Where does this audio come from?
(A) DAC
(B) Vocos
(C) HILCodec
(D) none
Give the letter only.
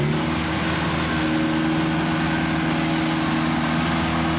D